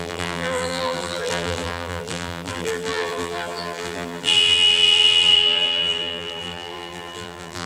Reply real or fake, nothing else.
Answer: fake